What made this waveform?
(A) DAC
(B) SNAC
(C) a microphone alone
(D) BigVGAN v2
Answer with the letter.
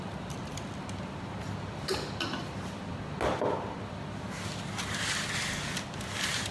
C